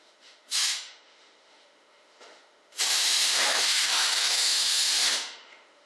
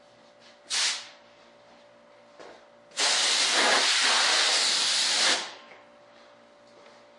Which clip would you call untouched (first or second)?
second